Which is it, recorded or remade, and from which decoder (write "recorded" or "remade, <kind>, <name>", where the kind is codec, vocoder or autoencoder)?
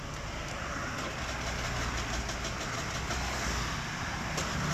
recorded